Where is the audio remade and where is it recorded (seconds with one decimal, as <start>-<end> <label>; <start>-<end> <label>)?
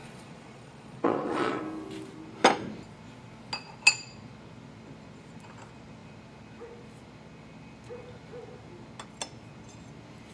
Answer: 0.0-1.6 remade; 1.6-10.3 recorded